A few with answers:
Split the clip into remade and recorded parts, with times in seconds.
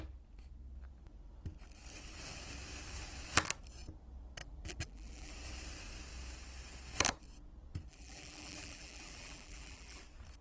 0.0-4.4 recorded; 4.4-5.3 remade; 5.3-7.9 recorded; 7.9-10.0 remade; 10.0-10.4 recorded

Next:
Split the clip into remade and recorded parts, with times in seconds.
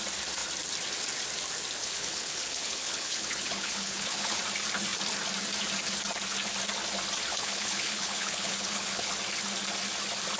0.0-1.8 recorded; 1.8-4.4 remade; 4.4-7.3 recorded; 7.3-9.1 remade; 9.1-10.4 recorded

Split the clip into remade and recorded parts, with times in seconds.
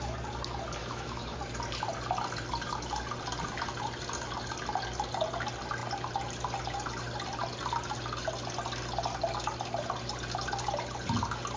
0.0-0.8 recorded; 0.8-1.4 remade; 1.4-11.6 recorded